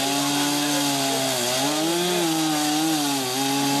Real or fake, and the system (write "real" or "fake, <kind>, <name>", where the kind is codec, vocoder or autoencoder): real